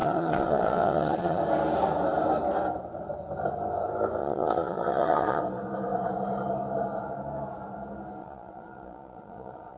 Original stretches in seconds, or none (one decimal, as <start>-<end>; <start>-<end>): 1.4-4.2; 5.4-8.2